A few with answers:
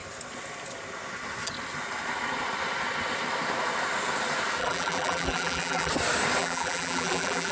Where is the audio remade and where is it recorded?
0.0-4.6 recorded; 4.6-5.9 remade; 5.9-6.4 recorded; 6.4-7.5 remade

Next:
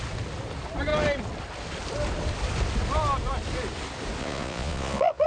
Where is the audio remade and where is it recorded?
0.0-4.2 recorded; 4.2-5.3 remade

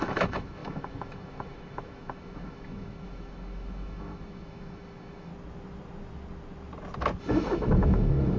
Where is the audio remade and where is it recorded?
0.0-5.3 remade; 5.3-7.2 recorded; 7.2-8.4 remade

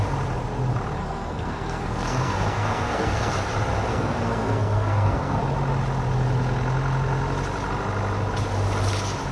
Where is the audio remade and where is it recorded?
0.0-1.0 recorded; 1.0-3.5 remade; 3.5-3.9 recorded; 3.9-5.4 remade; 5.4-9.3 recorded

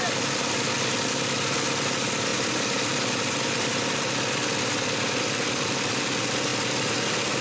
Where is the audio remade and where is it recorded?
0.0-7.4 recorded

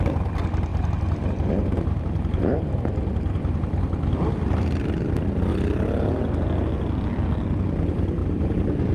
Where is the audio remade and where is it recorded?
0.0-0.7 recorded; 0.7-2.7 remade; 2.7-5.5 recorded; 5.5-6.1 remade; 6.1-8.9 recorded

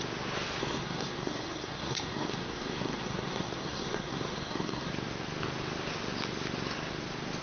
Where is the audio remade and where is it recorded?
0.0-0.6 recorded; 0.6-4.9 remade; 4.9-7.4 recorded

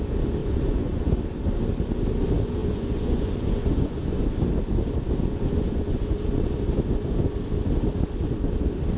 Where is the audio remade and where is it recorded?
0.0-0.4 recorded; 0.4-1.1 remade; 1.1-2.6 recorded; 2.6-4.2 remade; 4.2-5.2 recorded; 5.2-6.2 remade; 6.2-9.0 recorded